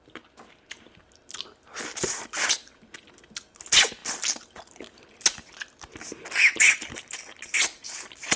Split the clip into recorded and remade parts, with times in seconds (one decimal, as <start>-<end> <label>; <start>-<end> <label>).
0.0-8.4 recorded